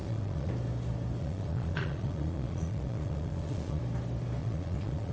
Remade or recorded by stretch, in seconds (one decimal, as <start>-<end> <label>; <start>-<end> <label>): 0.0-0.5 remade; 0.5-1.2 recorded; 1.2-3.8 remade; 3.8-4.4 recorded; 4.4-5.1 remade